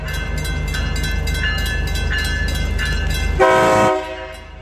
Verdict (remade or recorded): recorded